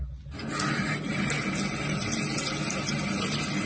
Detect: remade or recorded recorded